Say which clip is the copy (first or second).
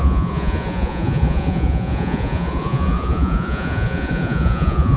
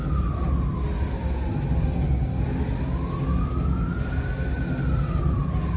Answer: first